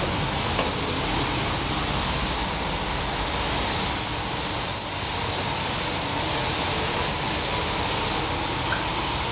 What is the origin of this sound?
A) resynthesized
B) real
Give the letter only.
B